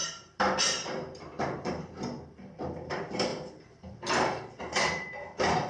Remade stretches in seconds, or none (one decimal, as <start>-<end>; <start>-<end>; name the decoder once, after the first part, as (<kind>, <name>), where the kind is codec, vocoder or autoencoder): 0.0-5.7 (vocoder, BigVGAN v2)